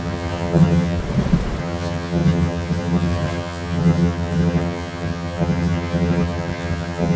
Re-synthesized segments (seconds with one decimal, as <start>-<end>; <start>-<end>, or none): 0.0-1.0; 1.6-7.2